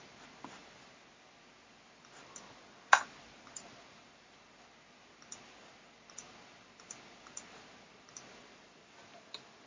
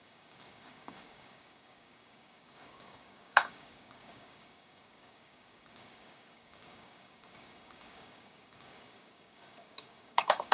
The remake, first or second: second